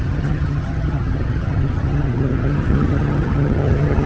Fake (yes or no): yes